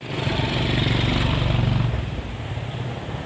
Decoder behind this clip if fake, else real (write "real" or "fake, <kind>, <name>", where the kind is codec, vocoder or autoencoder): real